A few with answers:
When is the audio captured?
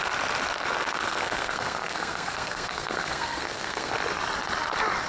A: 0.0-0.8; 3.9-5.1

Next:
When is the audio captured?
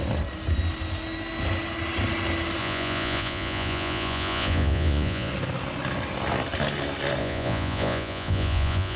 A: 0.0-2.6; 5.3-7.2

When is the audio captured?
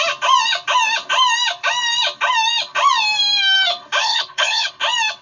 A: 0.0-4.0; 4.7-5.2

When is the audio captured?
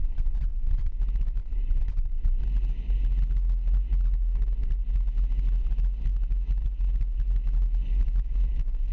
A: 1.0-1.4; 2.4-8.9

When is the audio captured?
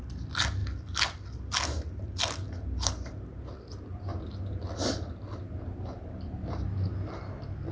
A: 0.0-7.7